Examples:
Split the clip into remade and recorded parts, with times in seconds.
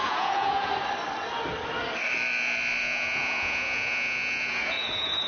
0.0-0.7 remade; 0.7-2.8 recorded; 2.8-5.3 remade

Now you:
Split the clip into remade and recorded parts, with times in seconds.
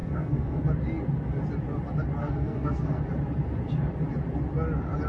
0.0-0.6 remade; 0.6-2.2 recorded; 2.2-3.0 remade; 3.0-5.1 recorded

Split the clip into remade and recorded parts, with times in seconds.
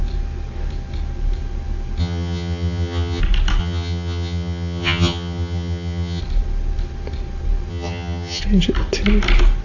0.0-2.0 recorded; 2.0-3.2 remade; 3.2-3.6 recorded; 3.6-6.2 remade; 6.2-7.7 recorded; 7.7-8.4 remade; 8.4-9.6 recorded